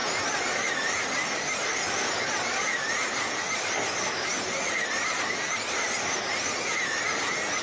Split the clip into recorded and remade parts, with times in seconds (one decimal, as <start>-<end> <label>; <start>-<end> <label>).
0.0-7.6 recorded